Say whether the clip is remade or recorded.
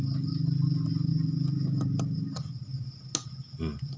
recorded